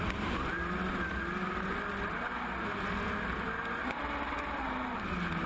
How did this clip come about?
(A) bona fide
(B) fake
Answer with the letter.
A